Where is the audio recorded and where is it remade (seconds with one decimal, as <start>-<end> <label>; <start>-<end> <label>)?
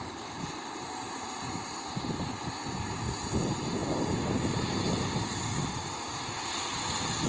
0.0-7.3 recorded